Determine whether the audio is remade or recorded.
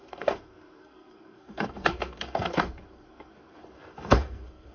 remade